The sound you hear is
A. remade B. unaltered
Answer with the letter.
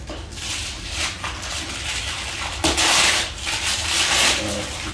B